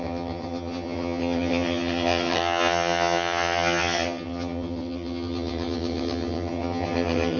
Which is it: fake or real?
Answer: fake